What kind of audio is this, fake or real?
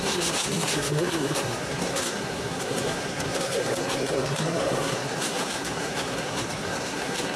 fake